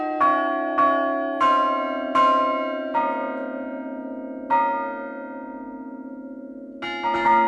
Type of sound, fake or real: real